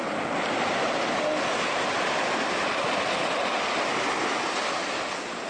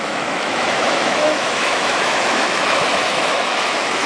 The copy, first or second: second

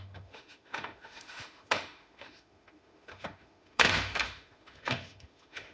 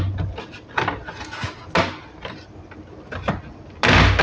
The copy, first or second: first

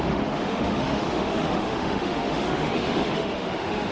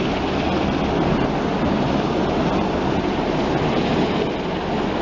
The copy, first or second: first